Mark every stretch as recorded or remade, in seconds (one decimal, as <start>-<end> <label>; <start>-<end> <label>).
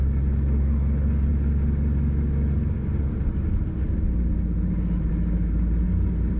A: 0.0-6.4 recorded